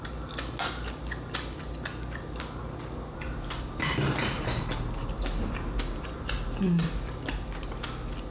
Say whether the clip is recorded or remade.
recorded